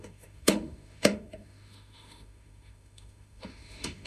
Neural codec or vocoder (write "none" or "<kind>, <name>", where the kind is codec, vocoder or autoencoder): autoencoder, DAC-VAE